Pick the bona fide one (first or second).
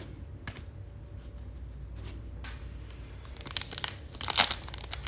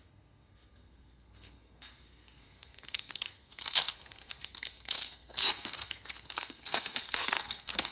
first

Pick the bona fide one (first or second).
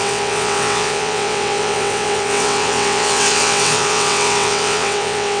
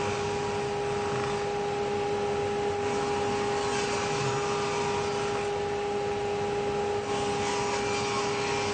second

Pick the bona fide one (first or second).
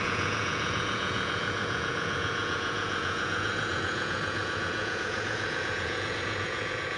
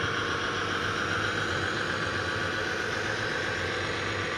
second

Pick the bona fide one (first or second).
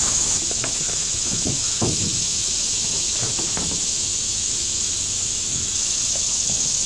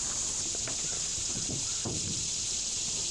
second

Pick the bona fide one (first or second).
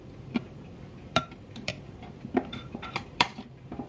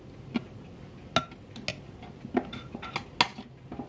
second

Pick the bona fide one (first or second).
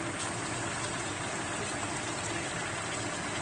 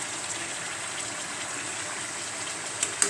second